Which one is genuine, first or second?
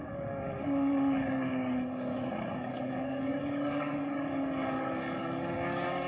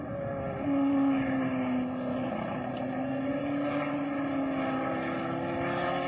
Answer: second